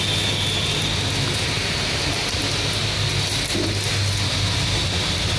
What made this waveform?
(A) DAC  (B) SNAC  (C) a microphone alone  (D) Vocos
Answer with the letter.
C